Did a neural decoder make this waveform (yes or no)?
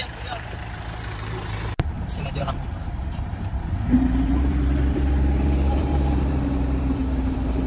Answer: yes